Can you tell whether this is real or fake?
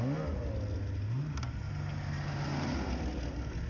real